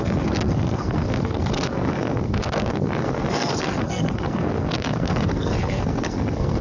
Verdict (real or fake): fake